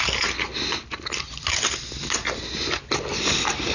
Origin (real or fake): real